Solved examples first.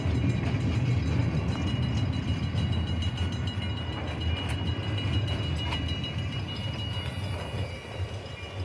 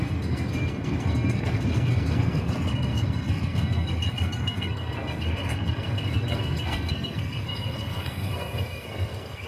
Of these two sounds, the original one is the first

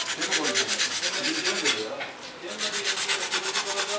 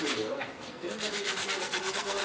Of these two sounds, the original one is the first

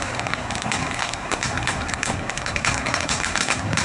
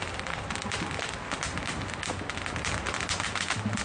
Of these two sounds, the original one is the second